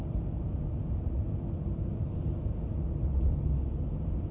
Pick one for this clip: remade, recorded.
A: recorded